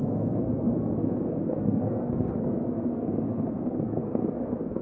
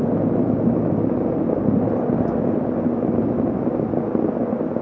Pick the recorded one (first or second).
second